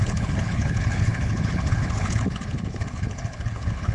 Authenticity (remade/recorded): remade